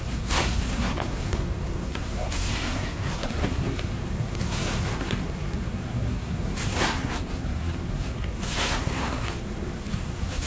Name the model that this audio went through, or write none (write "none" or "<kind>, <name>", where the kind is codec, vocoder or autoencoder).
codec, SNAC